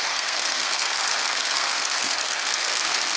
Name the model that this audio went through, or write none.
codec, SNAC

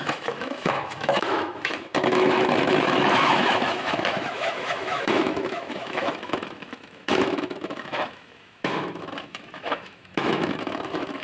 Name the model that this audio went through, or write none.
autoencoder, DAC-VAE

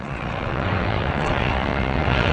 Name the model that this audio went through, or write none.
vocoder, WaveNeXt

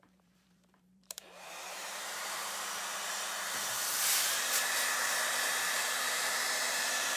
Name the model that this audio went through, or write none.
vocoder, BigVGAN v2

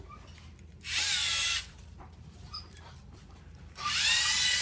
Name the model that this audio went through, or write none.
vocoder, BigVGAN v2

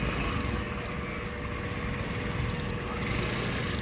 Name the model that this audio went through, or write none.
none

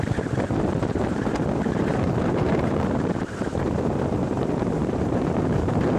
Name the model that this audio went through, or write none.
vocoder, BigVGAN v2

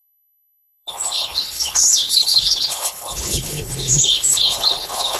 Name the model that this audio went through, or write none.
codec, HILCodec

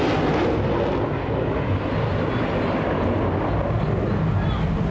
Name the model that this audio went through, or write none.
none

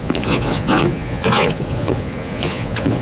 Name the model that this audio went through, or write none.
vocoder, Vocos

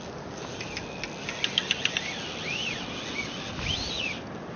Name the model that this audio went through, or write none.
none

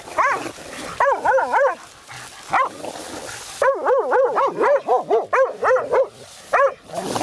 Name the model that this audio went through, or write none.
none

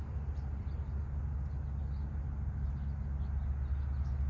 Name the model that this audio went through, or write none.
none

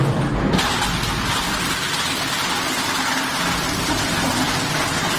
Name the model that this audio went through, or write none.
none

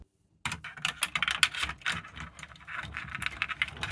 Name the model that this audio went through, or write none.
none